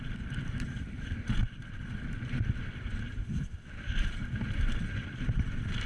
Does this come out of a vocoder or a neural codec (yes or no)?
no